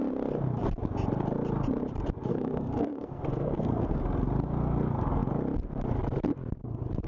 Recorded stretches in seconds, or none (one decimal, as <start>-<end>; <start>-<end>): 0.0-2.3; 4.0-7.1